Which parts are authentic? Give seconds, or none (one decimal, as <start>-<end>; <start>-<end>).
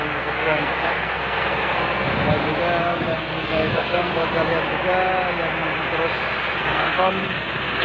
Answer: 2.1-2.8; 4.2-6.6